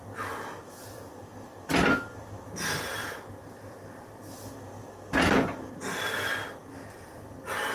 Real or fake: real